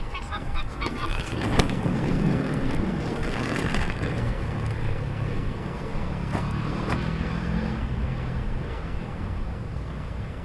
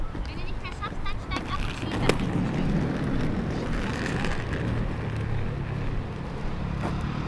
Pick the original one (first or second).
second